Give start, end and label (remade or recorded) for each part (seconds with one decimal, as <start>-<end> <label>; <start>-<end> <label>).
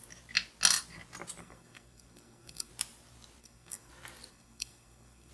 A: 0.0-1.4 recorded; 1.4-2.7 remade; 2.7-3.4 recorded; 3.4-3.9 remade; 3.9-4.3 recorded; 4.3-5.3 remade